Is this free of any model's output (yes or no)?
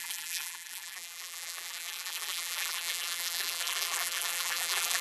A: no